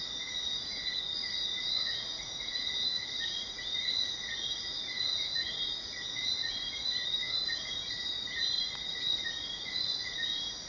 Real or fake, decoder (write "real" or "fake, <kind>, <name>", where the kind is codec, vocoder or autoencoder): fake, vocoder, Vocos